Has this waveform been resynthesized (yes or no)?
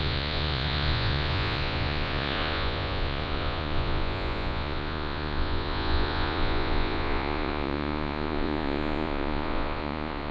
yes